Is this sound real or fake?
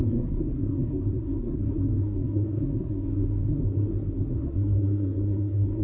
fake